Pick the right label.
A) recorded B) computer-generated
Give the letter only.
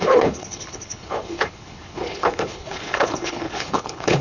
B